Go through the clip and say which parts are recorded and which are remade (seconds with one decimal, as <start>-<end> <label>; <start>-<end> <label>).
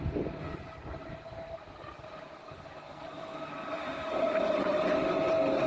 0.0-2.4 recorded; 2.4-3.5 remade; 3.5-5.7 recorded